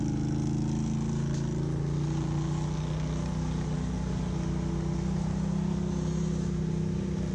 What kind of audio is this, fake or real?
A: real